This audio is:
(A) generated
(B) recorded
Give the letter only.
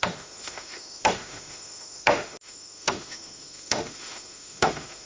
A